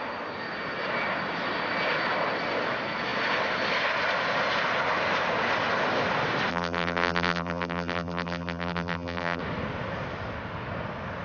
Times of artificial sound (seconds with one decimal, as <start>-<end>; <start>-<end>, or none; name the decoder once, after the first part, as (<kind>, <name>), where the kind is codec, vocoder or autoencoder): 6.5-9.4 (vocoder, BigVGAN v2)